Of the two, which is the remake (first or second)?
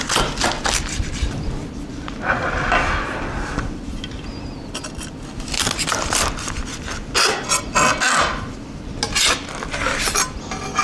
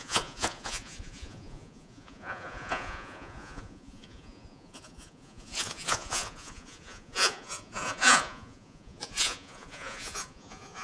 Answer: second